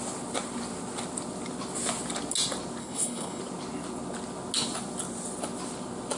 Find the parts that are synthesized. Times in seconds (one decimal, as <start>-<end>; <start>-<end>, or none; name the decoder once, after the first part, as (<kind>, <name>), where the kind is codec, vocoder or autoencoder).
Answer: 2.8-3.4 (codec, HILCodec)